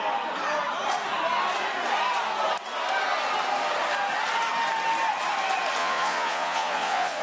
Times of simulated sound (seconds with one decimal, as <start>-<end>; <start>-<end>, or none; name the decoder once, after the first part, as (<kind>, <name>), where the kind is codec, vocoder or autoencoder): 5.8-7.2 (vocoder, Vocos)